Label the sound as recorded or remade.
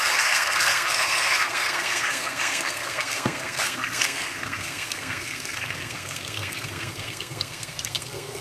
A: remade